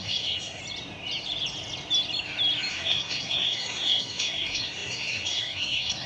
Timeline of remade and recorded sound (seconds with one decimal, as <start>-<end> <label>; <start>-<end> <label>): 0.0-0.6 remade; 0.6-2.7 recorded; 2.7-6.1 remade